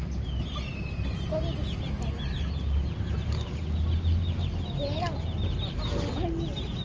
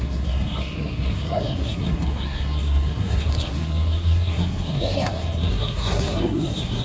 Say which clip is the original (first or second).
first